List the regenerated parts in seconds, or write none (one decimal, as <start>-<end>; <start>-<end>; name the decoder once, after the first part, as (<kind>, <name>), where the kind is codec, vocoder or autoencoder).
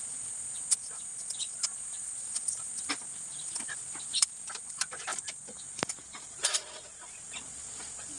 none